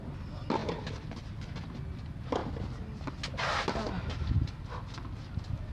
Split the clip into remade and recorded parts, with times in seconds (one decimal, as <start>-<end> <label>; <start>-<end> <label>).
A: 0.0-5.7 recorded

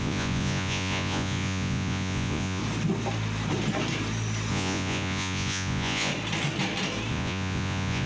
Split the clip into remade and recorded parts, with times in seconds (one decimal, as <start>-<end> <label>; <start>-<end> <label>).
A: 0.0-2.6 remade; 2.6-4.5 recorded; 4.5-6.1 remade; 6.1-7.1 recorded; 7.1-8.1 remade

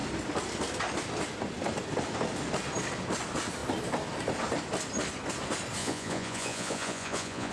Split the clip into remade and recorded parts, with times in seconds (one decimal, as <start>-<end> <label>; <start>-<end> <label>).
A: 0.0-5.8 recorded; 5.8-7.5 remade

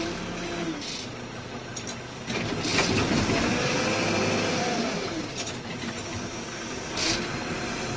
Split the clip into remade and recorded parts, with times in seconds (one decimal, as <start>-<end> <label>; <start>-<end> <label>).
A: 0.0-1.1 recorded; 1.1-1.7 remade; 1.7-4.5 recorded; 4.5-7.2 remade; 7.2-8.0 recorded

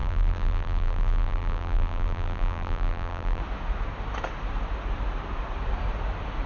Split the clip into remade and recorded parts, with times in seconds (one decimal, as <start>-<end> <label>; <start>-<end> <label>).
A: 0.0-3.4 remade; 3.4-6.5 recorded

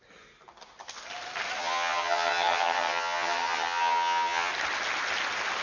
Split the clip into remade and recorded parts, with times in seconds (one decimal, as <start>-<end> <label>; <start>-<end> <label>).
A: 0.0-1.6 recorded; 1.6-4.5 remade; 4.5-5.6 recorded

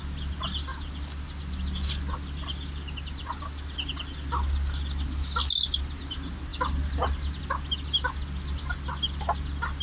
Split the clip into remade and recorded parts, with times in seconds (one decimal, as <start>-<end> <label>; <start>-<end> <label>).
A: 0.0-6.5 recorded; 6.5-7.4 remade; 7.4-9.8 recorded